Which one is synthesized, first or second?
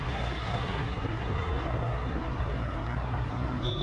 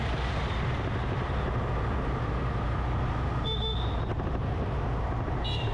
first